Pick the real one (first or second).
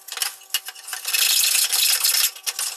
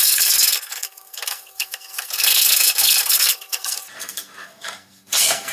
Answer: first